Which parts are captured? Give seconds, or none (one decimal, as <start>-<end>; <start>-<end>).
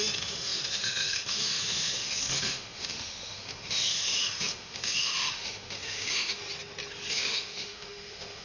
6.4-7.1